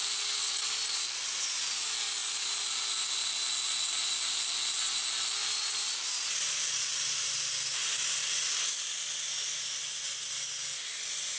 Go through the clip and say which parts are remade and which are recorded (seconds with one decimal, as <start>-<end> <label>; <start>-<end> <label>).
0.0-11.4 recorded